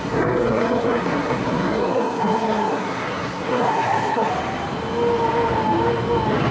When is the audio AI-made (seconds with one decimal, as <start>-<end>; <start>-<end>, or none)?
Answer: 0.0-4.3